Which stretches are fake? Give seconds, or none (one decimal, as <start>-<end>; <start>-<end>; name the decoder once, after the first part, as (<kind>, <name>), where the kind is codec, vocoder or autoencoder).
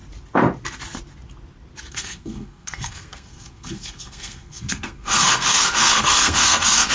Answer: 1.9-6.9 (codec, SNAC)